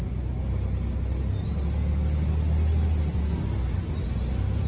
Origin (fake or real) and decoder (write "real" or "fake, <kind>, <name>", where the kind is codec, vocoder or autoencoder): real